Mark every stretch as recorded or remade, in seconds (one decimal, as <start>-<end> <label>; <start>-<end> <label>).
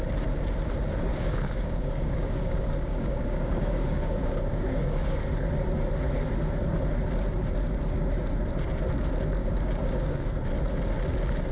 0.0-1.1 recorded; 1.1-5.2 remade; 5.2-9.4 recorded; 9.4-10.3 remade; 10.3-11.5 recorded